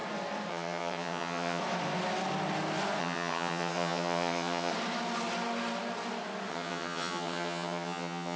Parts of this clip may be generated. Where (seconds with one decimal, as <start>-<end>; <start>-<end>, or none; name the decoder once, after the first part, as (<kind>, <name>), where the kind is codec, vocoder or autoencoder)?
0.5-1.6 (vocoder, HiFi-GAN); 3.0-4.7; 6.5-8.4